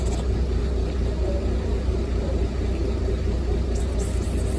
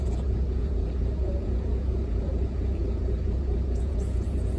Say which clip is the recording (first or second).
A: first